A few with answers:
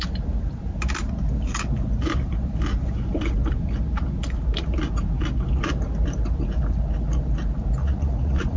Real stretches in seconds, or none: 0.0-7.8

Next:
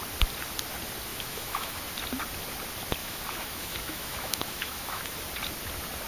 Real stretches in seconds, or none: 0.0-1.1; 1.8-3.0; 5.2-6.1

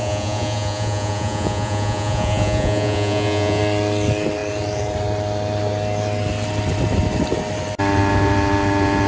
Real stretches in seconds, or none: 3.6-9.1

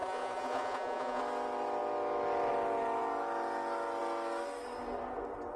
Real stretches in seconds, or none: 1.2-5.6

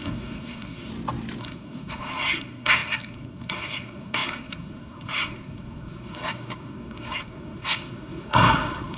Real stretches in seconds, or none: 0.9-1.4

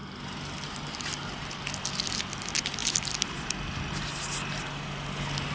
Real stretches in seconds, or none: 0.0-5.5